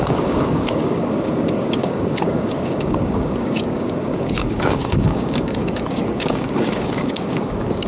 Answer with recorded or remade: remade